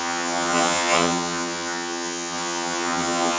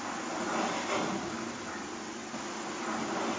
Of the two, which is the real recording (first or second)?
second